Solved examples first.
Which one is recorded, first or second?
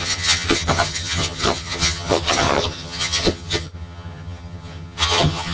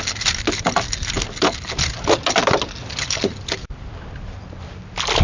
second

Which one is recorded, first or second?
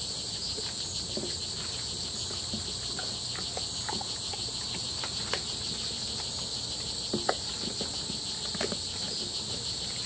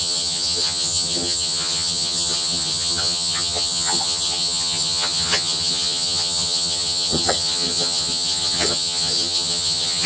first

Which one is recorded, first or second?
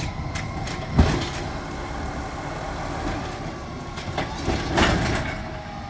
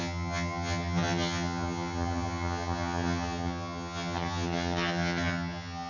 first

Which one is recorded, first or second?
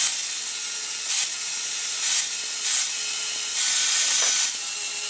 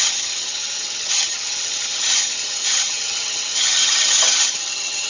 first